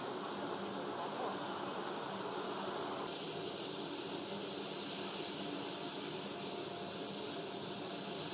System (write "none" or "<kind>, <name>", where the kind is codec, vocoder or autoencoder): none